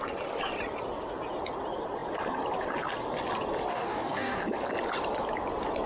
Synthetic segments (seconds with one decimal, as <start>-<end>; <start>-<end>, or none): 3.7-4.4